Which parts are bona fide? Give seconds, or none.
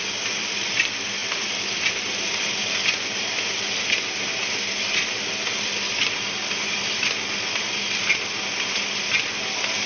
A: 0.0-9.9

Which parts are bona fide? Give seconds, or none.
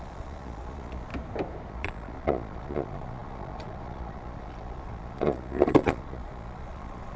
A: 1.1-1.7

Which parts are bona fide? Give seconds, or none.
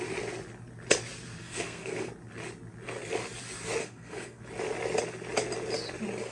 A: 0.0-1.4; 2.1-3.8; 4.4-6.3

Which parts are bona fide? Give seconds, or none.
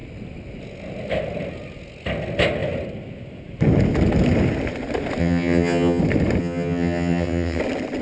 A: 0.0-5.2; 6.0-6.4; 7.6-8.0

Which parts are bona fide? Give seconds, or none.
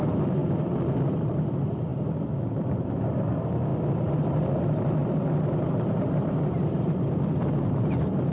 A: 5.0-6.1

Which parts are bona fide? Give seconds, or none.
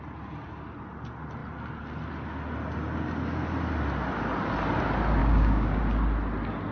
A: 0.0-5.2; 5.8-6.7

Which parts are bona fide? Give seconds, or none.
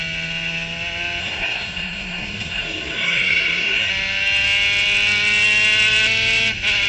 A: 0.0-1.2; 3.9-6.9